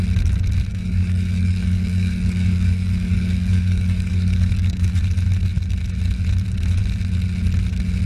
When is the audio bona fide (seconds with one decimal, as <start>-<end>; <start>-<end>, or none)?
0.0-0.7; 5.0-8.1